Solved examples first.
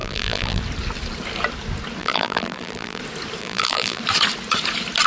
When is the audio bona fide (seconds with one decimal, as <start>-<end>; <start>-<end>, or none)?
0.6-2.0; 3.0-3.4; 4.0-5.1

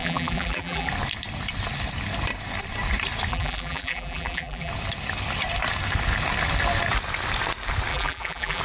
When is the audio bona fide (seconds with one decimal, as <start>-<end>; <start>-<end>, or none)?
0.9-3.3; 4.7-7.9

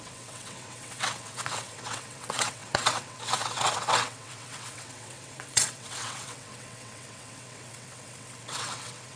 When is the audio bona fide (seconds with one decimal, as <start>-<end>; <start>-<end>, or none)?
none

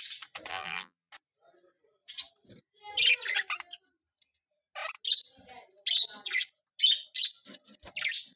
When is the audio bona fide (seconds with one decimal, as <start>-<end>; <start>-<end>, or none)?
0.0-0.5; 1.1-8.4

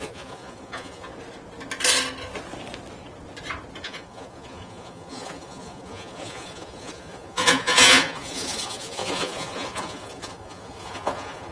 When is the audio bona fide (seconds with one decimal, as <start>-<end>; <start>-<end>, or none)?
1.1-3.8

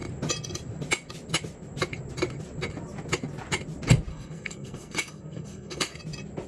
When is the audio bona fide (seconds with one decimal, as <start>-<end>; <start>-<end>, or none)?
0.0-4.1; 6.0-6.5

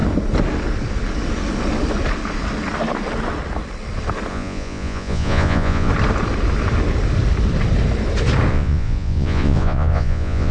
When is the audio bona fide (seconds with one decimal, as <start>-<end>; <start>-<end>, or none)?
0.0-4.3; 5.9-8.5

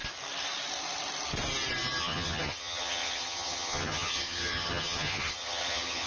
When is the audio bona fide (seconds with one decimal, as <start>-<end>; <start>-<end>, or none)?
0.0-2.0